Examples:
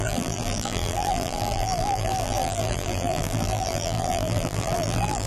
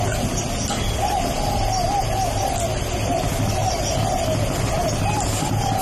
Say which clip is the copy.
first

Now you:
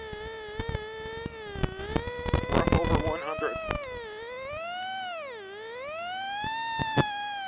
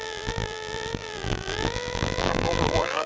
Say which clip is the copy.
second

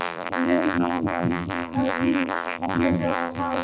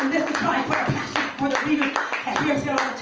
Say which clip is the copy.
first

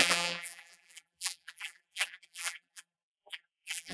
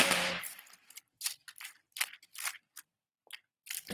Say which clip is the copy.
first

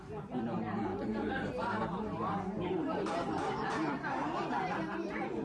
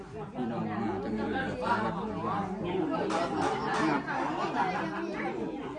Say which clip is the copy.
first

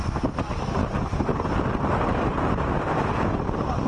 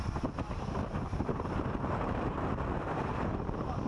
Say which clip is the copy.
second